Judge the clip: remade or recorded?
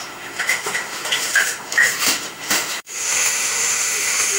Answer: remade